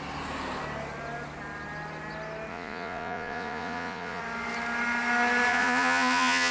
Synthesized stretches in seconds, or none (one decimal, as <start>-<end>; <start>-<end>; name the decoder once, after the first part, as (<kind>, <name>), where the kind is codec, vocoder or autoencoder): 2.5-4.2 (vocoder, Vocos); 5.5-6.5